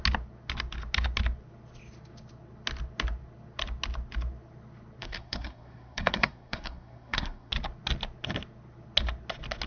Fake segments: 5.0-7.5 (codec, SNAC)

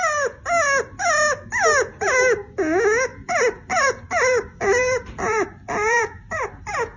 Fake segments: 3.1-6.4 (vocoder, BigVGAN v2)

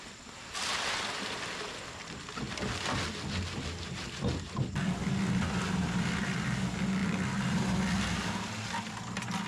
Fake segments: none

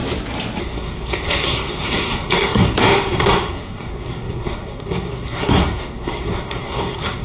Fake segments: 0.6-7.2 (codec, SNAC)

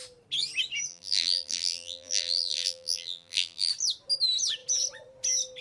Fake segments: 0.9-3.7 (vocoder, BigVGAN v2)